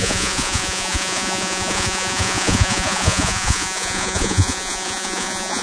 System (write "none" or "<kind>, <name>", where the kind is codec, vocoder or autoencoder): vocoder, Vocos